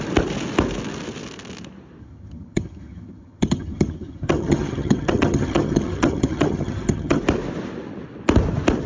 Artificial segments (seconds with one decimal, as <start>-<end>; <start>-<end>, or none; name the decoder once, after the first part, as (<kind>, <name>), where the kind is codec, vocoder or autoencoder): 2.0-7.2 (vocoder, HiFi-GAN)